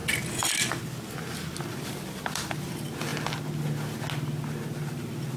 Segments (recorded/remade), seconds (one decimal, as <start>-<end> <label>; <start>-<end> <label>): 0.0-1.6 recorded; 1.6-3.1 remade; 3.1-4.4 recorded; 4.4-5.4 remade